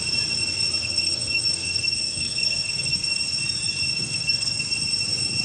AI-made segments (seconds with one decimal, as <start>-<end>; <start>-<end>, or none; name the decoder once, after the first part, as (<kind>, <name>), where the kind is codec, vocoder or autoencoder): 0.8-3.2 (codec, SNAC); 3.9-4.6